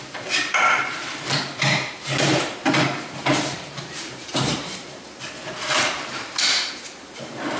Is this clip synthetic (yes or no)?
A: yes